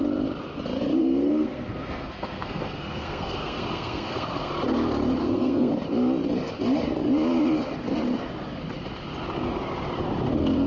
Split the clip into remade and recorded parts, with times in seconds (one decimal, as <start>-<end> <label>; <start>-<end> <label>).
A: 0.0-1.0 recorded; 1.0-4.5 remade; 4.5-5.2 recorded; 5.2-5.7 remade; 5.7-10.7 recorded